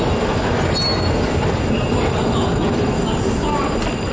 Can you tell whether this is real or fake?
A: real